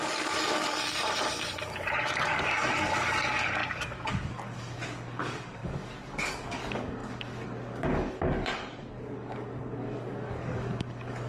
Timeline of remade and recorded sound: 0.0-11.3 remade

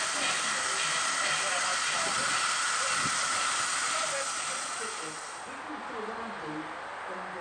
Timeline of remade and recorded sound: 0.0-7.4 recorded

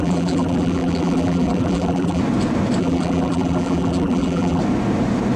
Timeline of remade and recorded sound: 0.0-2.2 remade; 2.2-2.8 recorded; 2.8-4.6 remade; 4.6-5.4 recorded

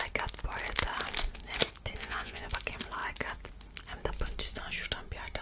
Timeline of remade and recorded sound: 0.0-2.0 recorded; 2.0-2.5 remade; 2.5-5.4 recorded

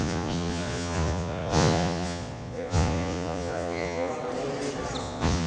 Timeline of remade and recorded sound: 0.0-4.1 remade; 4.1-5.0 recorded; 5.0-5.5 remade

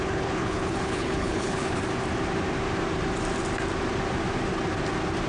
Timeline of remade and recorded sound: 0.0-1.8 remade; 1.8-5.3 recorded

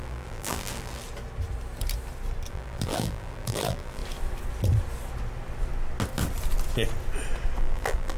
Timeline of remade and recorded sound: 0.0-1.0 remade; 1.0-2.5 recorded; 2.5-4.0 remade; 4.0-7.6 recorded; 7.6-8.2 remade